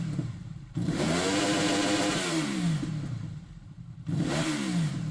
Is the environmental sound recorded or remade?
remade